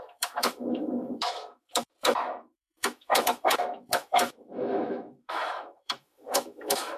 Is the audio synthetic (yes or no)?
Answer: yes